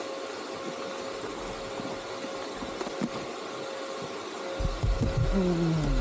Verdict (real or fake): real